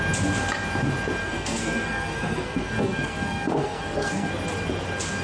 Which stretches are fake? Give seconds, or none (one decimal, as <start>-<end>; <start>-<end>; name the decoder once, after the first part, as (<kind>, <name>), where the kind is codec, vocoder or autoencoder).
1.2-4.3 (codec, SNAC)